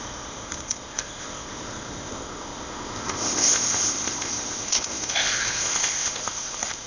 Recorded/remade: remade